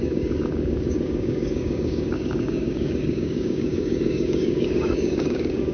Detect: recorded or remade remade